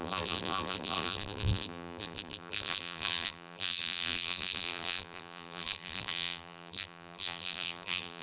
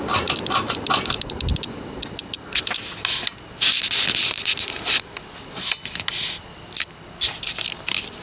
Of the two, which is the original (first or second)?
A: second